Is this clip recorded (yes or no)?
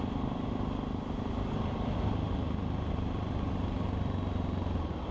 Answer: yes